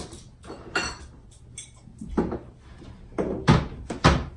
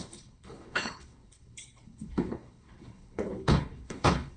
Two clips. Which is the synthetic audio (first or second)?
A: second